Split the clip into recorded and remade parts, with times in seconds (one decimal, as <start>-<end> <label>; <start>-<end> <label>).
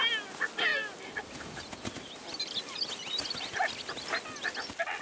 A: 0.0-0.7 recorded; 0.7-3.7 remade; 3.7-5.0 recorded